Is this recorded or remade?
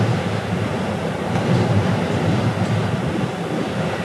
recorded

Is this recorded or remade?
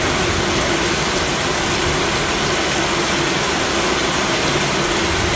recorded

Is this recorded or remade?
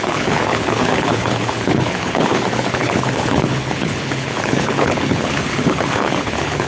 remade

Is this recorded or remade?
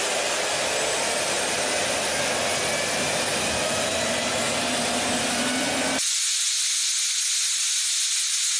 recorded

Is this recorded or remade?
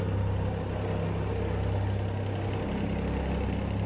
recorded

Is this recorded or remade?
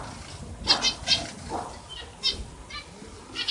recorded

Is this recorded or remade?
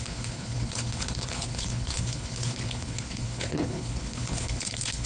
remade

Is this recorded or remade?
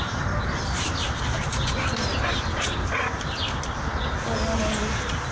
recorded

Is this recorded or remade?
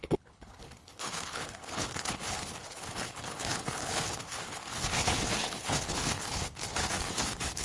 remade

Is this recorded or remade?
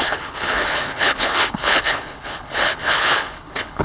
remade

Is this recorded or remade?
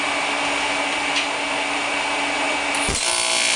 recorded